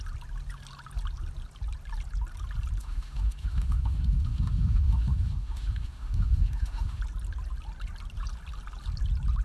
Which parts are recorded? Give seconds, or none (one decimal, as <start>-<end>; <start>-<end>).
0.0-2.8; 7.0-9.4